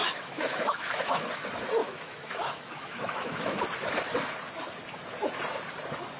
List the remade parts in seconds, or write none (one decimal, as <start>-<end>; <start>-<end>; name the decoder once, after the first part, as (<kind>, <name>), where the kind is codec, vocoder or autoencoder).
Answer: 0.0-1.3 (autoencoder, DAC-VAE); 1.8-3.6